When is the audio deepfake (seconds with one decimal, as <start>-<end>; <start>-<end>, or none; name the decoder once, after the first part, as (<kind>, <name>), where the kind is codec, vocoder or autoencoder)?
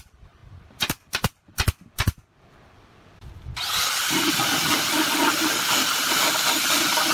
none